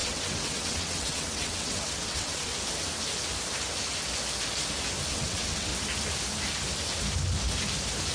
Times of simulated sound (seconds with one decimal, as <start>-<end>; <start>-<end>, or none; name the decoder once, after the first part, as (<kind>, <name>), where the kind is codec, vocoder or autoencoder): 0.0-2.5 (vocoder, WaveNeXt); 5.1-5.7